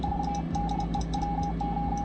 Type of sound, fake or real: real